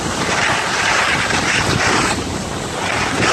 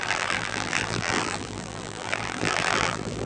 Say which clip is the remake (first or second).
second